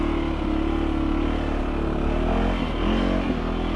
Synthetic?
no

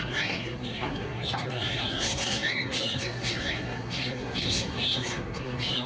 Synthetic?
yes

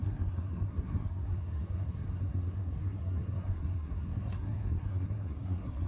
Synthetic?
yes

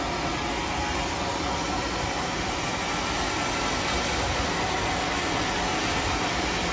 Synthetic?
no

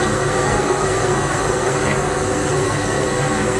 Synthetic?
yes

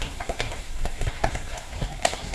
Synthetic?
yes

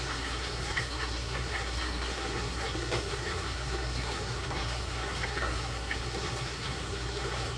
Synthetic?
yes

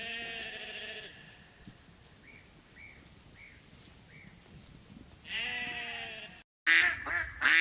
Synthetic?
no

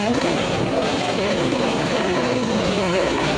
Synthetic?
yes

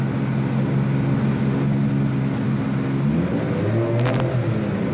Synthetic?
no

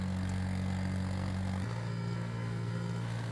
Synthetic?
yes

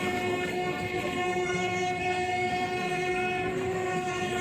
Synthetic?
yes